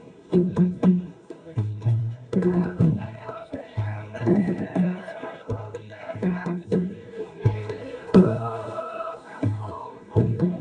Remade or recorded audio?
remade